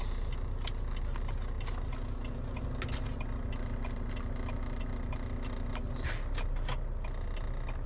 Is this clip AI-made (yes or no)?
no